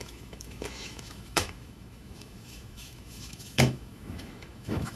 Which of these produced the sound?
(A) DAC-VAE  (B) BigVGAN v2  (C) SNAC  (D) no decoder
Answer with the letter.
A